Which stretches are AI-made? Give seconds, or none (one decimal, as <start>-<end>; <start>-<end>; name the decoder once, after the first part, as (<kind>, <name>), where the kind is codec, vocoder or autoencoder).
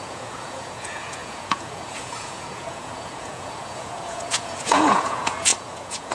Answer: 0.0-6.1 (vocoder, Vocos)